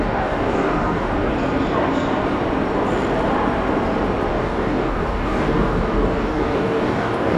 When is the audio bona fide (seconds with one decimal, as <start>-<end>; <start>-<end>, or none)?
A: 1.3-4.3